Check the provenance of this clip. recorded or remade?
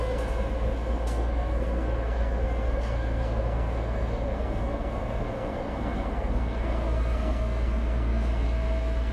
remade